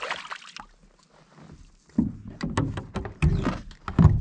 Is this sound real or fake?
real